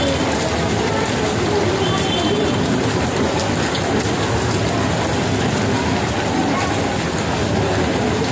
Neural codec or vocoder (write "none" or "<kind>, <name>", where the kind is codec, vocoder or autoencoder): none